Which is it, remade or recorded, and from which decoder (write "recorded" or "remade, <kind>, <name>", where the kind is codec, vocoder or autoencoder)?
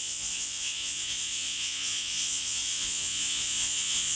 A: remade, vocoder, Vocos